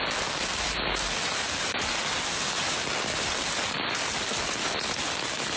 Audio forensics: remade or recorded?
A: recorded